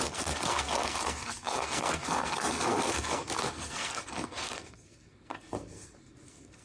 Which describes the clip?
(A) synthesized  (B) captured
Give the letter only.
A